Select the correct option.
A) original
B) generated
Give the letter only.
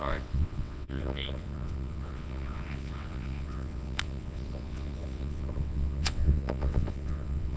B